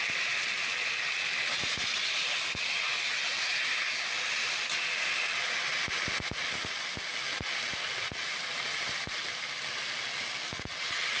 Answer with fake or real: real